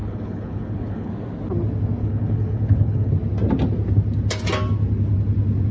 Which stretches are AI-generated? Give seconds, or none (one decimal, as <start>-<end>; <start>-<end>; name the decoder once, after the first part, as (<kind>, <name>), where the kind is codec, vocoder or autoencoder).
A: 0.0-1.1 (codec, HILCodec); 2.0-3.1